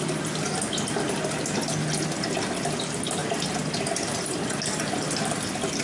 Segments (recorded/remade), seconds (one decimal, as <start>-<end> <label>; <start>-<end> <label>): 0.0-5.8 recorded